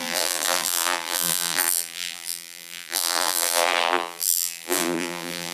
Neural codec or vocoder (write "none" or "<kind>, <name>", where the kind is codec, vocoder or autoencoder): vocoder, BigVGAN v2